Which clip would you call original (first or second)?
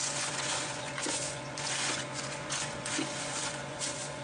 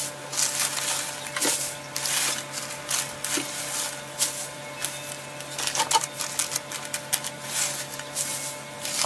second